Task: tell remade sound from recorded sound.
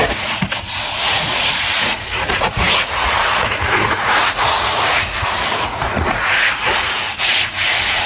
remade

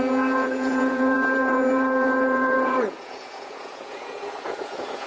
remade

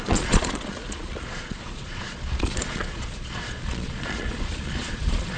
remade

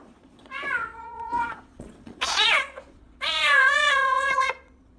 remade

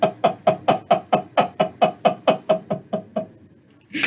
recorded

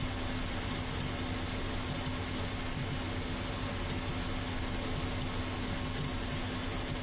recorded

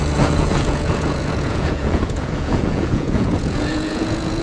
remade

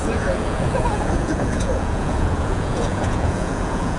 remade